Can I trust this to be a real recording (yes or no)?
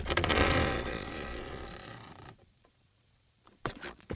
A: no